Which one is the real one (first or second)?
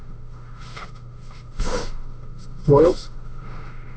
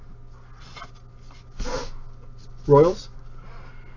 second